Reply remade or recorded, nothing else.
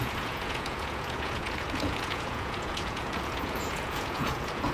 remade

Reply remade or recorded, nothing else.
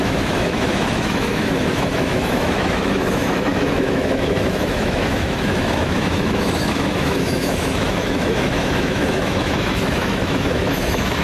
remade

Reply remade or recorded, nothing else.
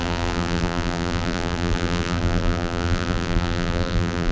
remade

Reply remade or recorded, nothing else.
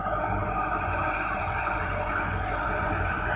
remade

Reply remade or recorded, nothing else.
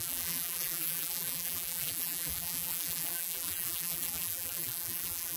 remade